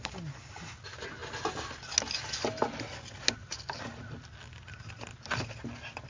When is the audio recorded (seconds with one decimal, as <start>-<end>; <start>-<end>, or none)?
0.0-6.1